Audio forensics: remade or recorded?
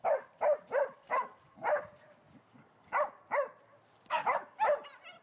recorded